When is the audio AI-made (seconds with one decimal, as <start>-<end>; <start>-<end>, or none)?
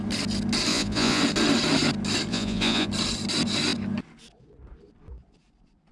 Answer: 0.7-1.2; 2.3-2.9